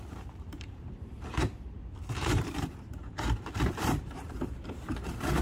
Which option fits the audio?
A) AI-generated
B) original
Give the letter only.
A